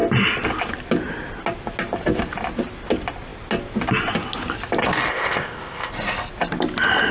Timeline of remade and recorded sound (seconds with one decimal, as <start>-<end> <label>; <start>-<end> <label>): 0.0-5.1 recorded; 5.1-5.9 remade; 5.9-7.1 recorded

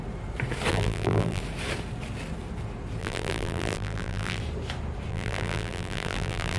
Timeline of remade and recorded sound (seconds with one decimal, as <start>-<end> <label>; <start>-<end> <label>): 0.0-0.7 recorded; 0.7-1.4 remade; 1.4-3.0 recorded; 3.0-4.4 remade; 4.4-5.1 recorded; 5.1-6.6 remade

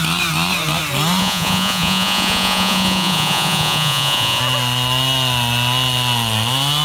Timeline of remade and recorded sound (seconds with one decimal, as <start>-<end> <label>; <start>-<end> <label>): 0.0-1.2 recorded; 1.2-4.4 remade; 4.4-6.8 recorded